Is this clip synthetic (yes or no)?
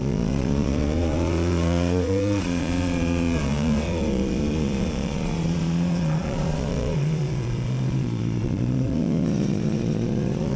yes